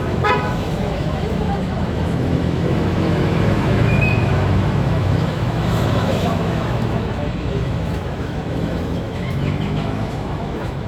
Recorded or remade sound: remade